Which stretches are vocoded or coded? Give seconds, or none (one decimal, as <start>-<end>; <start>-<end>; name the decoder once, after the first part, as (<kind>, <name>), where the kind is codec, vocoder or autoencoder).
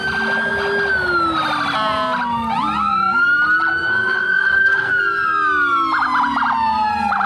3.7-5.0 (codec, SNAC)